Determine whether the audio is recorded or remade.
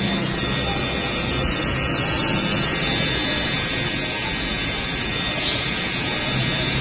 recorded